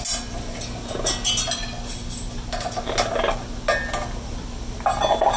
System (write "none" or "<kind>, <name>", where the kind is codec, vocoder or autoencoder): none